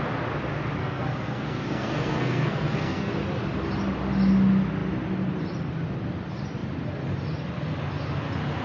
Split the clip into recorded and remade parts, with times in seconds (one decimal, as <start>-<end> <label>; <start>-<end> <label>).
0.0-0.8 recorded; 0.8-3.1 remade; 3.1-8.6 recorded